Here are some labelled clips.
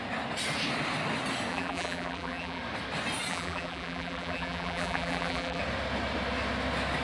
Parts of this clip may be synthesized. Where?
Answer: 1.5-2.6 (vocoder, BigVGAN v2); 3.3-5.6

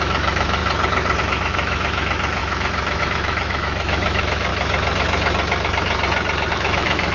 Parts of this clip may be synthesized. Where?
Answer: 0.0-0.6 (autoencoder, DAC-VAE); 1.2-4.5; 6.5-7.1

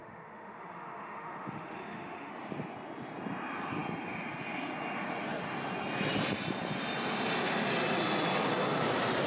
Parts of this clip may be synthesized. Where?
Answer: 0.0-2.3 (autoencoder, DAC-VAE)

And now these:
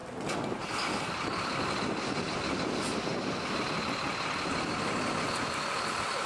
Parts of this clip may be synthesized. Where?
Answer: none

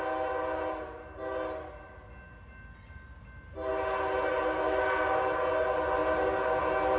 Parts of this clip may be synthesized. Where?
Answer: none